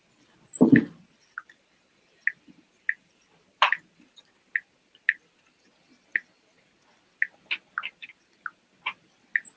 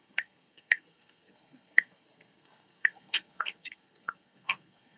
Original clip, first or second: first